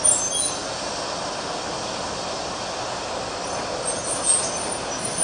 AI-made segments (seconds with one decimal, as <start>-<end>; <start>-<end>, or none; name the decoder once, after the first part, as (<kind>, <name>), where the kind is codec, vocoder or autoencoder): none